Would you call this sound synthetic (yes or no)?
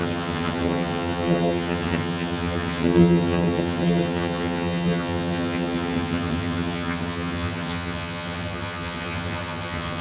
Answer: yes